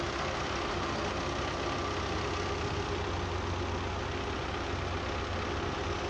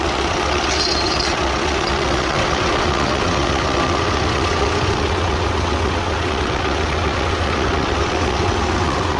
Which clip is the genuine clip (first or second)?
first